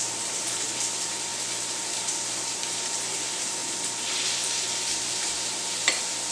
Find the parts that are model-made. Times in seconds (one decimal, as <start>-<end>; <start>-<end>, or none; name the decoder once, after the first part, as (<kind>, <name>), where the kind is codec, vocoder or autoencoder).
0.0-1.3 (vocoder, BigVGAN v2); 1.9-3.6